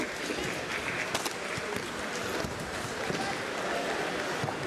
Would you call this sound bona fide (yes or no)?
yes